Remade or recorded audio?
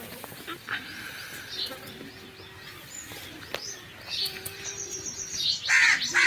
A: recorded